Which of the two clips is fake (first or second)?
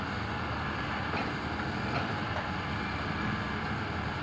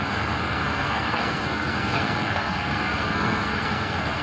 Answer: second